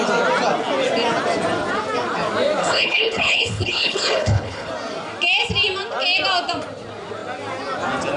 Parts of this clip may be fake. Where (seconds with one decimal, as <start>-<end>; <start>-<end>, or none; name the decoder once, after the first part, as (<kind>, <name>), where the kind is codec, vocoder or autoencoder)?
2.6-4.7 (codec, HILCodec)